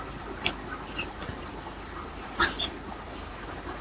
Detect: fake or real real